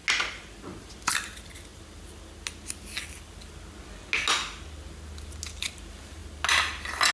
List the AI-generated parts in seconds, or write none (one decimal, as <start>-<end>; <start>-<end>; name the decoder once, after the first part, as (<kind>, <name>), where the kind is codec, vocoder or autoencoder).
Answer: none

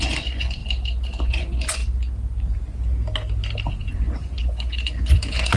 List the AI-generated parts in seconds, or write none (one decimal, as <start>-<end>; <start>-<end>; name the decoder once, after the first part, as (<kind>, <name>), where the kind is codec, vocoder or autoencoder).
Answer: 0.0-0.6 (vocoder, Vocos); 1.2-1.8; 3.7-5.6

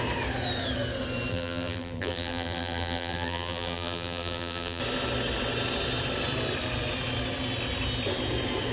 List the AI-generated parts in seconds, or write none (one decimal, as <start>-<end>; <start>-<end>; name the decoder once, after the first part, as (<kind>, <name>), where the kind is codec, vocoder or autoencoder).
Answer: 1.3-4.8 (vocoder, BigVGAN v2)

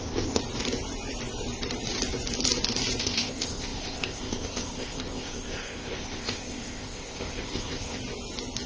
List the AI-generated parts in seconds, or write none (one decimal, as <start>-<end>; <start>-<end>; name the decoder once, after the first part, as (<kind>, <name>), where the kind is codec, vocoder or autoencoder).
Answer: 0.0-0.4 (codec, ZipCodec); 3.0-8.0

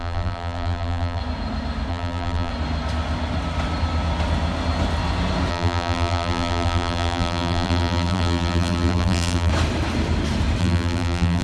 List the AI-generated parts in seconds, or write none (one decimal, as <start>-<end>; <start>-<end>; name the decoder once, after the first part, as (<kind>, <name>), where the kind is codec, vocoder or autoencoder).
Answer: 0.0-1.2 (vocoder, BigVGAN v2); 1.9-2.5; 5.5-9.5; 10.6-11.4

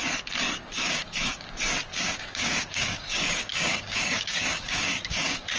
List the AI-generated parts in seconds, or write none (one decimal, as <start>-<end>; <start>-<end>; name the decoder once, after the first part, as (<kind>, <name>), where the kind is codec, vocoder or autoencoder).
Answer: 0.8-1.5 (codec, DAC); 1.9-5.6

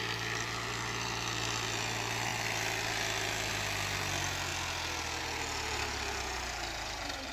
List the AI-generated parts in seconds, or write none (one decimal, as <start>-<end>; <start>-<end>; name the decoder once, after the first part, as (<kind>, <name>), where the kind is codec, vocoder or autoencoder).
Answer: none